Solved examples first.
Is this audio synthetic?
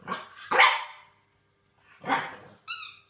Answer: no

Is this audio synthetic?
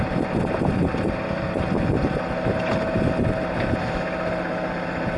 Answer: no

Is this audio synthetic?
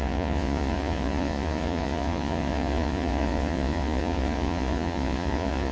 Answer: yes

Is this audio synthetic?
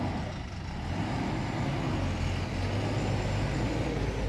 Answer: no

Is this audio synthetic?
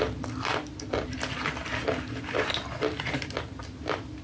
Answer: no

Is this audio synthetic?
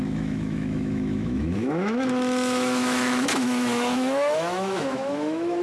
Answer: yes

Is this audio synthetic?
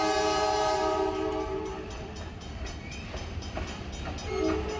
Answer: no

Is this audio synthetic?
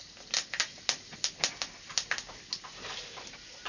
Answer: no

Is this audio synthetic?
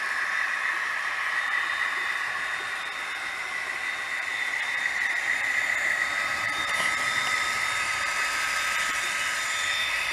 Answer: yes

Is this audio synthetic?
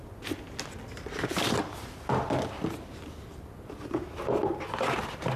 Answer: no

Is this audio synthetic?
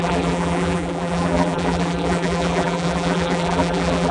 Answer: yes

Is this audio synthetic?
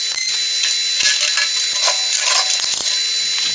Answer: no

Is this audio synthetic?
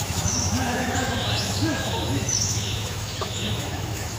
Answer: yes